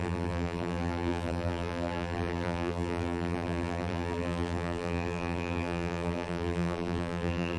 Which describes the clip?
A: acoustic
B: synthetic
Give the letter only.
B